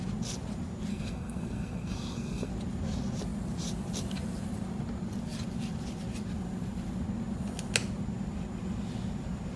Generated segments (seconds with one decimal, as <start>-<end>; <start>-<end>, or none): 0.9-2.5